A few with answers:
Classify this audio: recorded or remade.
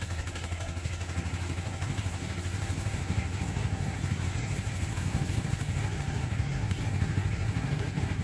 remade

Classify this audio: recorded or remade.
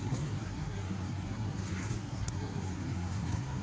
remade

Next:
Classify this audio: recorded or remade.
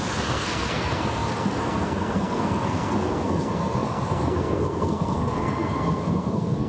remade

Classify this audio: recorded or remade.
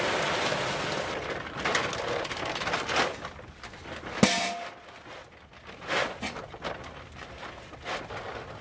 recorded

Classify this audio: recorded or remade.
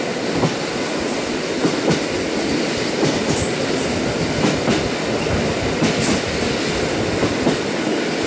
recorded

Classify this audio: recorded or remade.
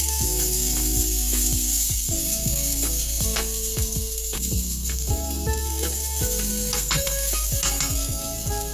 remade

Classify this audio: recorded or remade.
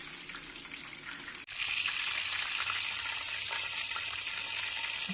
recorded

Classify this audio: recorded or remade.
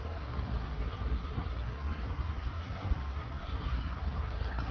remade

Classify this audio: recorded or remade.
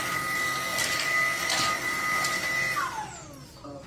recorded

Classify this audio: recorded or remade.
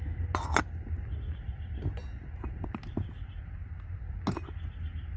recorded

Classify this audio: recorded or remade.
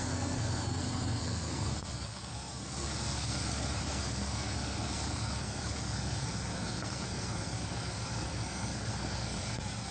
remade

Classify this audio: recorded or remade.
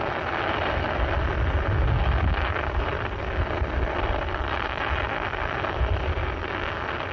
recorded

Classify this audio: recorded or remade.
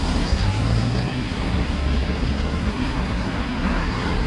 remade